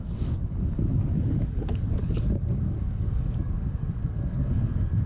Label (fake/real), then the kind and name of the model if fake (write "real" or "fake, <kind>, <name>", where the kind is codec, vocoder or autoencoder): fake, codec, DAC